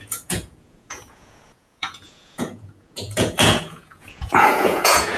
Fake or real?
fake